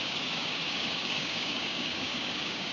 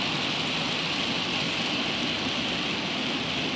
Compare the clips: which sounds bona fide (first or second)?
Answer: second